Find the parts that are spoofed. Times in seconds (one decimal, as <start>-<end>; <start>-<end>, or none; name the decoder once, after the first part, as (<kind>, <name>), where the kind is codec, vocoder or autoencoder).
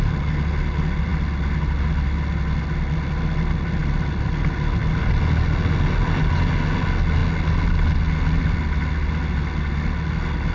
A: none